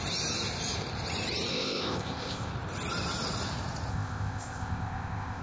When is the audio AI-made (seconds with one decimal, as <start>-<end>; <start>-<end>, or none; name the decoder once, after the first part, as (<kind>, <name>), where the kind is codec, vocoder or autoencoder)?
1.5-2.5 (codec, ZipCodec); 3.9-5.4